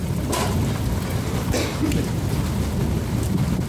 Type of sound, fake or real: real